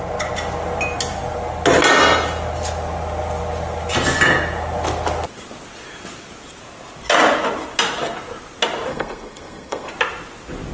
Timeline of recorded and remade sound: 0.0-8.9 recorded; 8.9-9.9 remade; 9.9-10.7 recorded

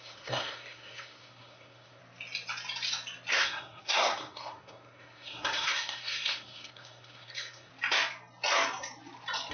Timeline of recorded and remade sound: 0.0-2.0 remade; 2.0-3.3 recorded; 3.3-7.7 remade; 7.7-9.5 recorded

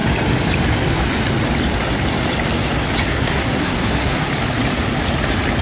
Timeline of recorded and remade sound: 0.0-3.0 recorded; 3.0-4.3 remade; 4.3-5.6 recorded

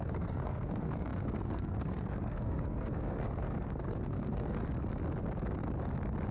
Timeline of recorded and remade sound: 0.0-4.6 remade; 4.6-6.3 recorded

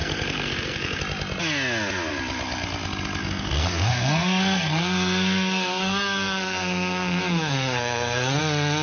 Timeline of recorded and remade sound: 0.0-1.0 remade; 1.0-3.2 recorded; 3.2-8.4 remade; 8.4-8.8 recorded